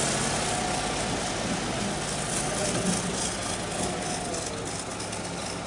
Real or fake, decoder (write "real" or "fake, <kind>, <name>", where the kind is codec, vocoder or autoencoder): real